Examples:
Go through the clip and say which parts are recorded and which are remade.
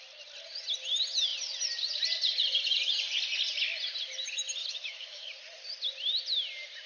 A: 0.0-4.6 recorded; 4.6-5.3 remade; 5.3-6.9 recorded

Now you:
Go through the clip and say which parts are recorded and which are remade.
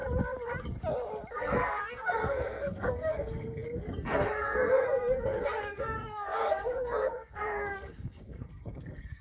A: 0.0-1.3 recorded; 1.3-9.2 remade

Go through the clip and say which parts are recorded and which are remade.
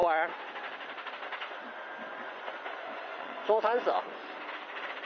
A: 0.0-2.1 recorded; 2.1-4.3 remade; 4.3-5.1 recorded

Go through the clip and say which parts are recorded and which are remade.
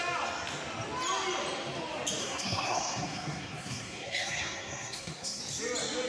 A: 0.0-2.2 recorded; 2.2-5.4 remade; 5.4-6.1 recorded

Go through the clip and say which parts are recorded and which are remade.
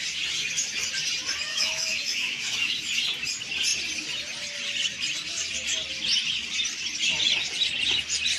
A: 0.0-1.5 recorded; 1.5-2.8 remade; 2.8-8.4 recorded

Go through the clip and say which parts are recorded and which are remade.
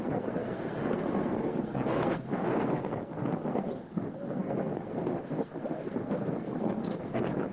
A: 0.0-7.5 remade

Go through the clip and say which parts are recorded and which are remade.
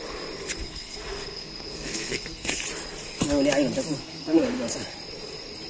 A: 0.0-0.6 recorded; 0.6-2.6 remade; 2.6-4.0 recorded; 4.0-4.7 remade; 4.7-5.7 recorded